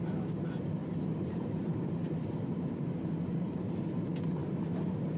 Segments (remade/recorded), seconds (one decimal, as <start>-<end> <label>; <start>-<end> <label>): 0.0-0.8 recorded; 0.8-3.7 remade; 3.7-5.2 recorded